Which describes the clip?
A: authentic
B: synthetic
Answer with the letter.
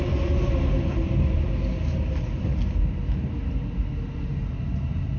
A